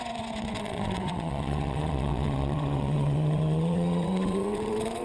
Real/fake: fake